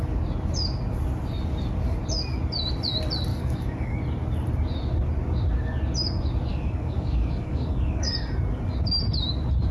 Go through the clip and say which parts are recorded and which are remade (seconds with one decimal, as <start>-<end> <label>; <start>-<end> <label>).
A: 0.0-3.3 recorded; 3.3-4.0 remade; 4.0-6.5 recorded; 6.5-8.1 remade; 8.1-9.7 recorded